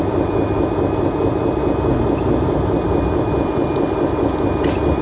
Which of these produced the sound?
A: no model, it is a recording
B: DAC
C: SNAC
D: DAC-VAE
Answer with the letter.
A